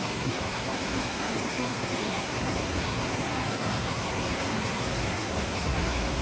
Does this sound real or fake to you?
fake